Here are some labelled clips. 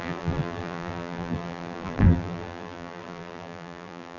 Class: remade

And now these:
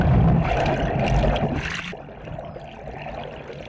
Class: recorded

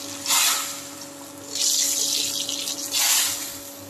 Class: recorded